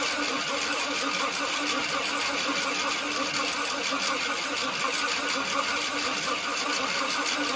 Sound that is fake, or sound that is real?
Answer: real